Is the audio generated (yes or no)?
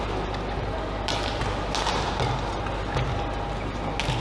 no